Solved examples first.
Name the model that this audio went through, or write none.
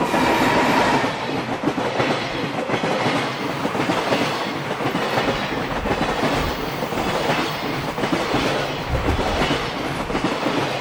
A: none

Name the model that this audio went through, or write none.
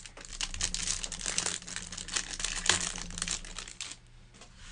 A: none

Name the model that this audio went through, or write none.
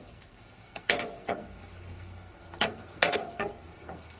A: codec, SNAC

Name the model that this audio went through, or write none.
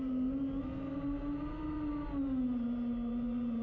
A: none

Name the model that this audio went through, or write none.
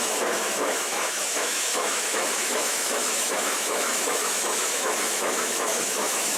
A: autoencoder, DAC-VAE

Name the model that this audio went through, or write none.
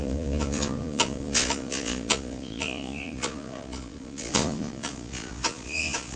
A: vocoder, Vocos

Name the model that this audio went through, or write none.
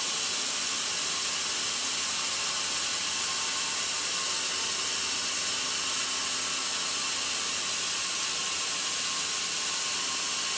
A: none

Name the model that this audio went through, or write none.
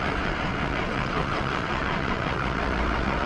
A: vocoder, WaveNeXt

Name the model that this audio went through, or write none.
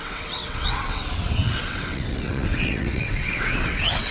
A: vocoder, WaveNeXt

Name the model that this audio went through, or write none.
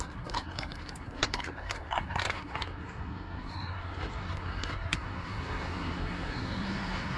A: codec, SNAC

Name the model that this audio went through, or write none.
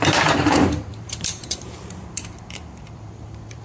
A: vocoder, BigVGAN v2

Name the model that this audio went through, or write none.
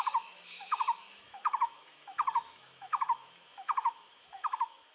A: autoencoder, DAC-VAE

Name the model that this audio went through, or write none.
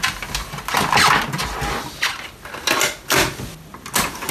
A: none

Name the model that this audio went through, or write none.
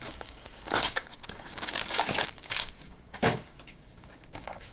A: codec, DAC